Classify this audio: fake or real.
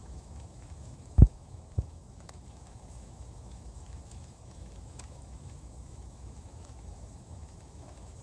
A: fake